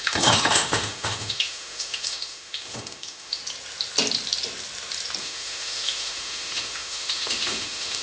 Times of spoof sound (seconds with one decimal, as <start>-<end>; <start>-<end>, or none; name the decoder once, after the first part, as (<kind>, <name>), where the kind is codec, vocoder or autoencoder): 0.0-3.4 (autoencoder, DAC-VAE); 5.2-8.0